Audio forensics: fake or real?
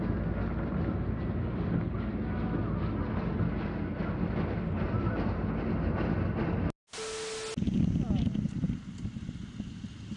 real